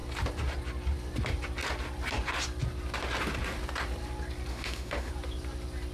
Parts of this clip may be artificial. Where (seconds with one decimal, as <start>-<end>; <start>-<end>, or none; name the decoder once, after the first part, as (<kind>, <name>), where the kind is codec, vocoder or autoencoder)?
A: 4.5-5.1 (autoencoder, DAC-VAE)